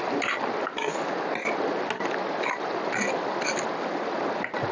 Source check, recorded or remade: recorded